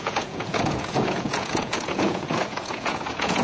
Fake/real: fake